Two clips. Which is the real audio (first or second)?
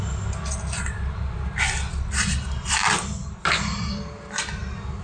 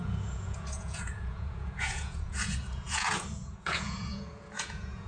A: first